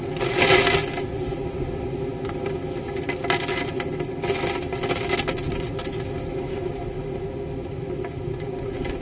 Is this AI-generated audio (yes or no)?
no